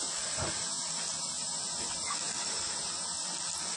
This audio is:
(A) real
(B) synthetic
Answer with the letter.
A